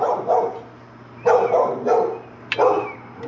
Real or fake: real